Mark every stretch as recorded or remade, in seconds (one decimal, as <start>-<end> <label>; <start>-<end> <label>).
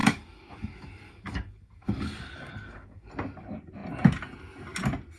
0.0-3.1 remade; 3.1-5.2 recorded